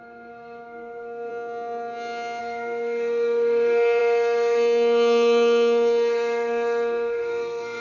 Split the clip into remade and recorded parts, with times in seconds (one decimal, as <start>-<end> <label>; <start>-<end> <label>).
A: 0.0-1.3 remade; 1.3-2.4 recorded; 2.4-7.8 remade